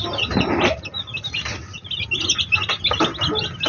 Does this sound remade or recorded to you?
recorded